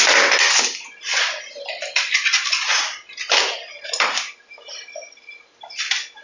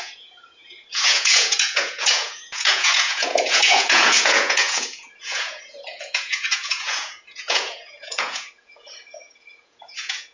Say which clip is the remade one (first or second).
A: second